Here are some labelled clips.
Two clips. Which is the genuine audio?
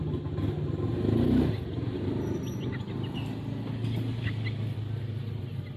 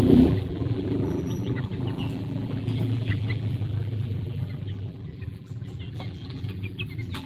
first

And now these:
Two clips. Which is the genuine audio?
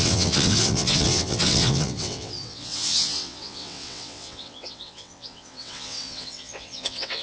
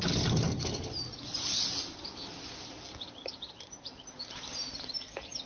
second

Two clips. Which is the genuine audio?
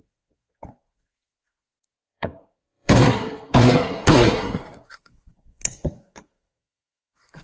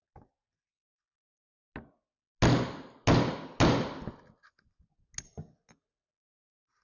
second